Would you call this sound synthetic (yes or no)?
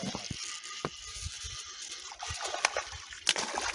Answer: no